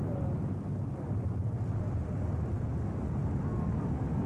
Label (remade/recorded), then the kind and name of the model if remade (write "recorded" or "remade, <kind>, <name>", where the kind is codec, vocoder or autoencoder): recorded